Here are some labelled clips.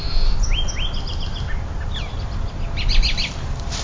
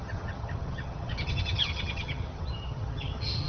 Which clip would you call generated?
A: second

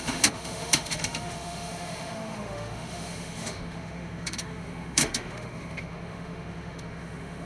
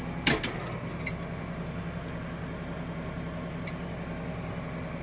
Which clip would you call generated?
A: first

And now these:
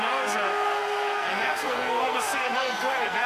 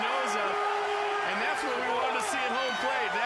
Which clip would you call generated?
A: first